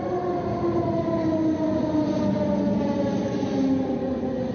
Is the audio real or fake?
real